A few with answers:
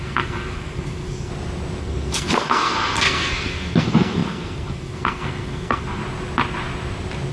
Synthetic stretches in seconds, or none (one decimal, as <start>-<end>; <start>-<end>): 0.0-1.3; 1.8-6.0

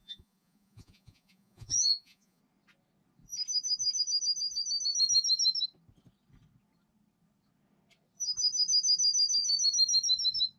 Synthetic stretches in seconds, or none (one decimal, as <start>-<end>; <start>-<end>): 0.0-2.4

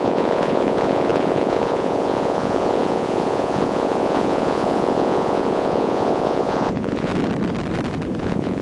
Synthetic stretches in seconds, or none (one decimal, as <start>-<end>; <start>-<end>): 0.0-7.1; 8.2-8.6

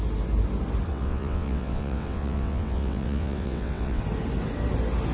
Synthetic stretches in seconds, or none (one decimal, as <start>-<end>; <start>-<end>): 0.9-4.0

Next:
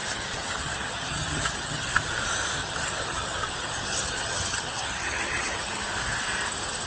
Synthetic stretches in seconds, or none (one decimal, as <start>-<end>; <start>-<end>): 0.0-2.1; 2.6-5.8

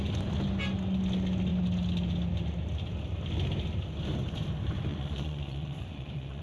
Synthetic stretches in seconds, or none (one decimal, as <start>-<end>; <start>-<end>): 4.9-6.4

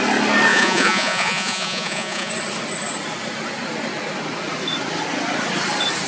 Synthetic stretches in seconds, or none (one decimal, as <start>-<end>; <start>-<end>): 0.5-2.3